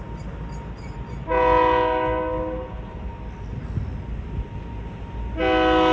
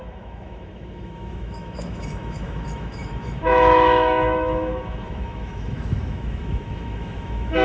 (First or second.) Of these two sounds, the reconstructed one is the second